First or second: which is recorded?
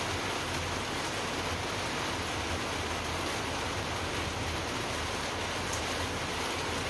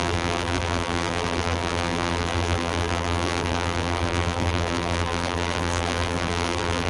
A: first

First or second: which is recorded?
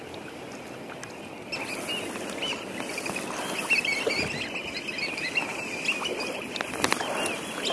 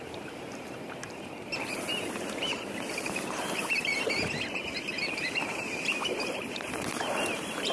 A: first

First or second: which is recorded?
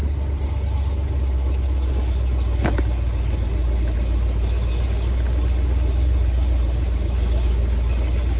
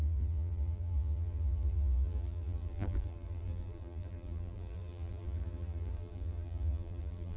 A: first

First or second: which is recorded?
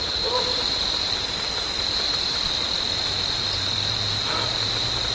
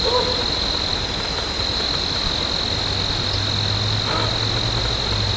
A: second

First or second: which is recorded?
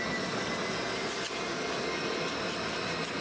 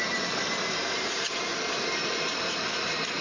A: first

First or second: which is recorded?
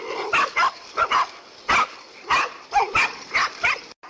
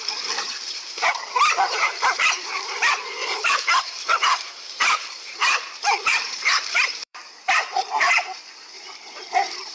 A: first